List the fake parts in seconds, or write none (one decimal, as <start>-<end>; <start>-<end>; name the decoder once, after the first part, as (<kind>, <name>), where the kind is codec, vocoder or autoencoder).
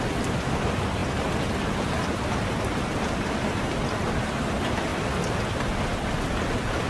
none